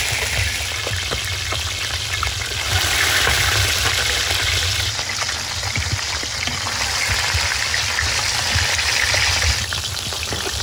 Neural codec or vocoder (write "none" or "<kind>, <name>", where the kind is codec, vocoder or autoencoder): none